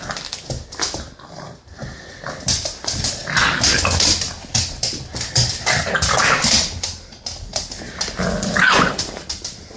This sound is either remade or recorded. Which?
recorded